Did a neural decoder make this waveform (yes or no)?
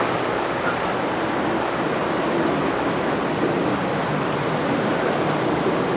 no